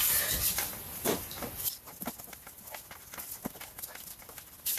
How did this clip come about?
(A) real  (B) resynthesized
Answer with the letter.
A